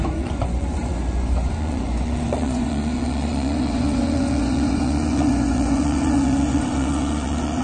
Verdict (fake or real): fake